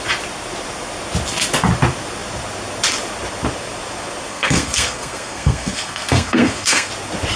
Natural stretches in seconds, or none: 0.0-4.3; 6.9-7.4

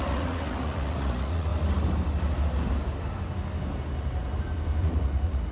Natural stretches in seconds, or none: 1.5-4.8

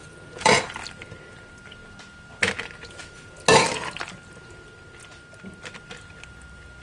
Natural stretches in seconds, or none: 0.6-6.8

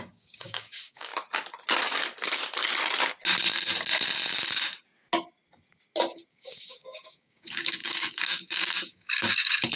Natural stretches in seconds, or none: 1.1-6.3

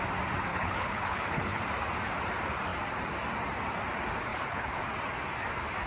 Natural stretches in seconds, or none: 0.0-0.5; 1.6-4.3; 4.8-5.9